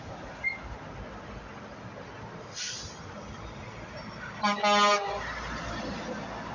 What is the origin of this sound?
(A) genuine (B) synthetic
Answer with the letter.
A